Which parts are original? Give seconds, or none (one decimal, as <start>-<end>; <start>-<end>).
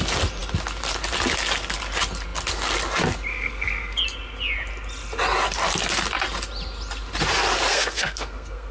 0.0-3.3; 4.0-7.7